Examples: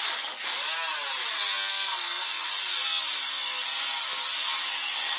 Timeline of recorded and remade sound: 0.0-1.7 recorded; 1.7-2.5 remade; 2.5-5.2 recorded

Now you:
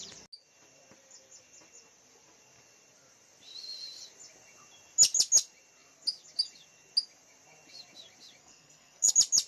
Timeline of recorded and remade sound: 0.0-8.4 recorded; 8.4-9.1 remade; 9.1-9.5 recorded

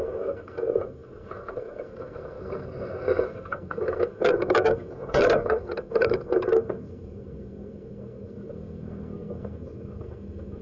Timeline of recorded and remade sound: 0.0-10.6 remade

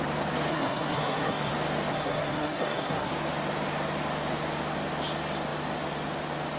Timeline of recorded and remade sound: 0.0-0.5 recorded; 0.5-1.5 remade; 1.5-1.9 recorded; 1.9-3.1 remade; 3.1-6.6 recorded

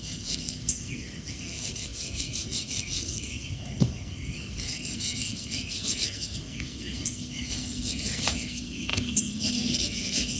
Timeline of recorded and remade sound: 0.0-10.4 remade

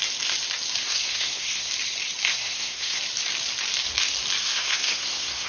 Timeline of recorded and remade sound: 0.0-0.8 recorded; 0.8-1.7 remade; 1.7-2.3 recorded; 2.3-3.0 remade; 3.0-4.4 recorded; 4.4-5.5 remade

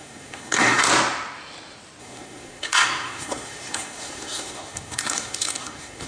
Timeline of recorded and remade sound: 0.0-0.9 remade; 0.9-2.0 recorded; 2.0-6.1 remade

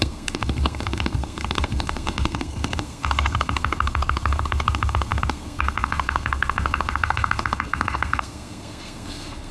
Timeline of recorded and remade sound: 0.0-9.5 remade